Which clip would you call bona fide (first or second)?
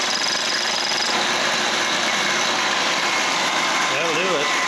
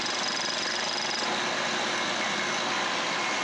second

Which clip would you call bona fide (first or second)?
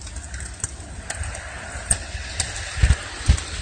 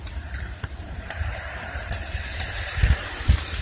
first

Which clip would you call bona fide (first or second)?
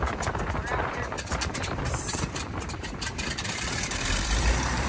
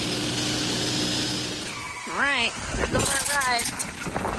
second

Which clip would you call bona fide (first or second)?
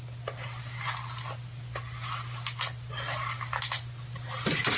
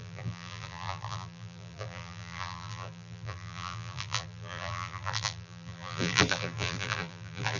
first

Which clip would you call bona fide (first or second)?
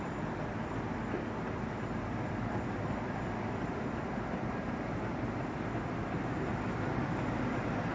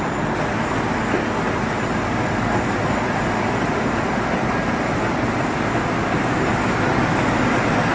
second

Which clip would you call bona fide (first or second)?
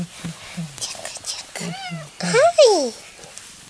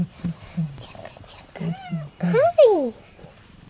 first